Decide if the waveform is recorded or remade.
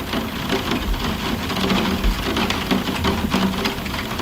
recorded